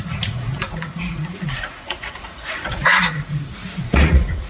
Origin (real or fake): fake